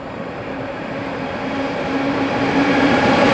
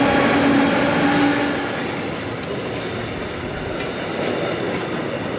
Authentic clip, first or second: second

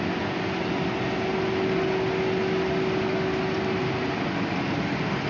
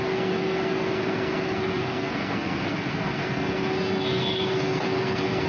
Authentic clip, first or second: first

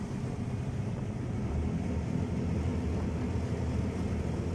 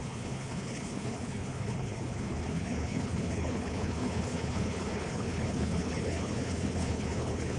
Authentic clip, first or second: first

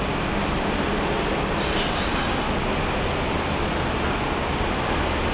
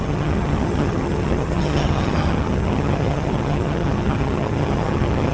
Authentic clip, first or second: first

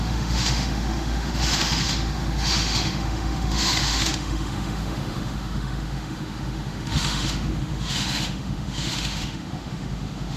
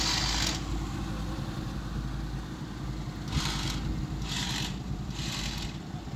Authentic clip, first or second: second